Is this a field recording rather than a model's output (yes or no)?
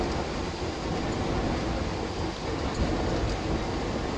yes